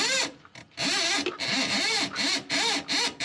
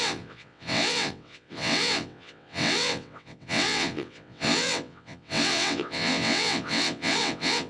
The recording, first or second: first